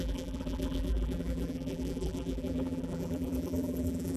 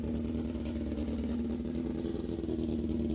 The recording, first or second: second